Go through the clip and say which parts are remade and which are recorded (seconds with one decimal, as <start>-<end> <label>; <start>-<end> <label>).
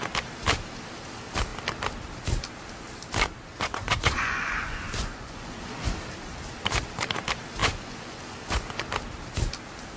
0.0-3.5 recorded; 3.5-6.0 remade; 6.0-7.6 recorded; 7.6-8.8 remade; 8.8-10.0 recorded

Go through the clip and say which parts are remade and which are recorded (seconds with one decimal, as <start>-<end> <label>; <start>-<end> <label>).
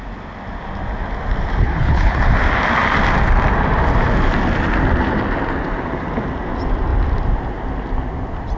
0.0-1.6 recorded; 1.6-2.2 remade; 2.2-8.6 recorded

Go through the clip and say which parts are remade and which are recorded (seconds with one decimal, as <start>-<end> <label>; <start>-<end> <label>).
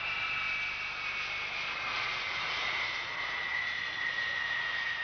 0.0-1.9 recorded; 1.9-5.0 remade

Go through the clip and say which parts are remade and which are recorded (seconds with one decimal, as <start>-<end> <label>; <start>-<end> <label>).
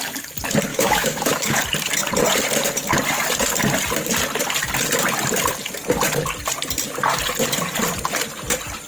0.0-0.7 recorded; 0.7-1.6 remade; 1.6-8.9 recorded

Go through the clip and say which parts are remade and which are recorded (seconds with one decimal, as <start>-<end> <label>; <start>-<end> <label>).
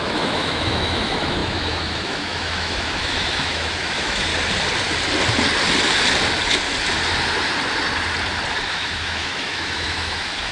0.0-4.3 remade; 4.3-8.7 recorded; 8.7-10.5 remade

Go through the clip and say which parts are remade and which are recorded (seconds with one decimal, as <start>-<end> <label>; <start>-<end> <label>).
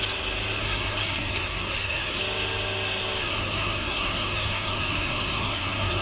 0.0-0.6 recorded; 0.6-2.2 remade; 2.2-3.2 recorded; 3.2-6.0 remade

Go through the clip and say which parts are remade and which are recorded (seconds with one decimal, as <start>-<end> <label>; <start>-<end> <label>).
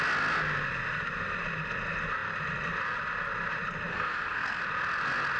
0.0-3.9 recorded; 3.9-4.6 remade; 4.6-5.4 recorded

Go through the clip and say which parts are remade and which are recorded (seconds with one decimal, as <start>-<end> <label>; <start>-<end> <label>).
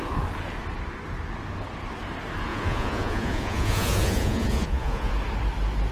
0.0-2.5 recorded; 2.5-5.1 remade; 5.1-5.9 recorded